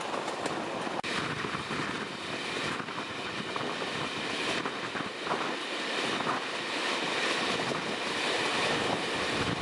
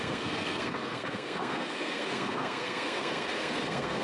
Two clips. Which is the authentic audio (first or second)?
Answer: first